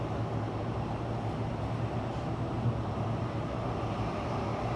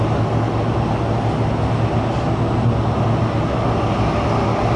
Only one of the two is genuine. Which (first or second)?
second